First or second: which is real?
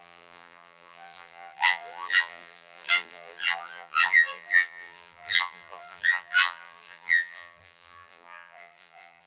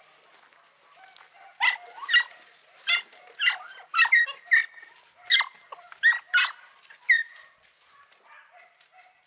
second